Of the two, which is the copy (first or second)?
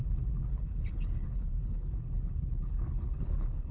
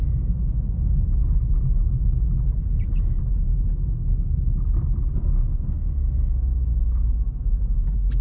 first